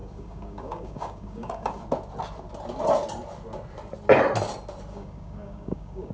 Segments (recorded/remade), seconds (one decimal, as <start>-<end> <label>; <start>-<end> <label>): 0.0-1.8 remade; 1.8-4.9 recorded; 4.9-6.1 remade